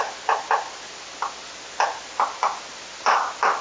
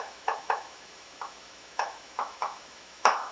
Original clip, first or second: first